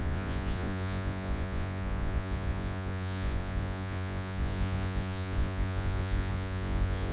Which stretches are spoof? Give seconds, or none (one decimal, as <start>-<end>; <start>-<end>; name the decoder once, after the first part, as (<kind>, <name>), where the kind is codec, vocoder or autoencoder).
0.0-7.1 (vocoder, Vocos)